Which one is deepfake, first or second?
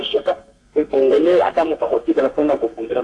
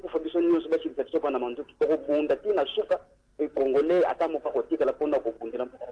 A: first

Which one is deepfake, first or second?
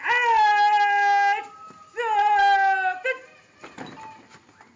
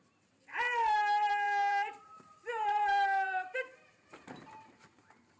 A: second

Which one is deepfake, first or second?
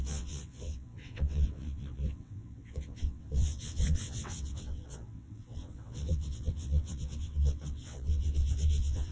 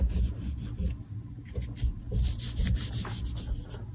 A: first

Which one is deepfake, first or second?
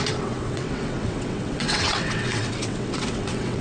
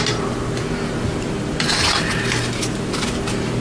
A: first